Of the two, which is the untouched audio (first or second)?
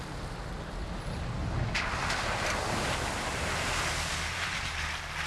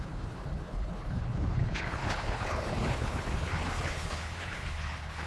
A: first